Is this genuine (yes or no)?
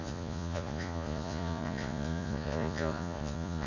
no